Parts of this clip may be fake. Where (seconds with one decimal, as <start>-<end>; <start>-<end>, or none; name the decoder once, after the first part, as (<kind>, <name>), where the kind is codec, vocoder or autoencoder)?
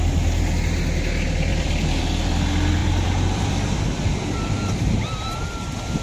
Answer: 1.5-2.0 (vocoder, BigVGAN v2); 2.8-5.4